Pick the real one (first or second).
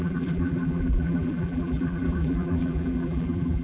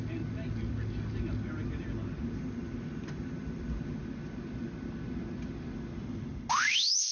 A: second